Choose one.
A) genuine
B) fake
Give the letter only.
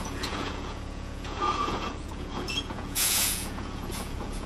B